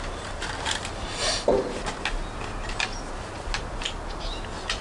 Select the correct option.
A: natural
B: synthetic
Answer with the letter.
A